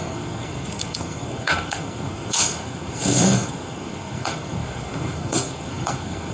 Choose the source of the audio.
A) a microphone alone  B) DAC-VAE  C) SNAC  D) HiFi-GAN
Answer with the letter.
C